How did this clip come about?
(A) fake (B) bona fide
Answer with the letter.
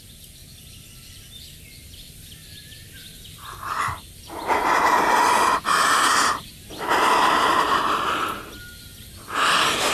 B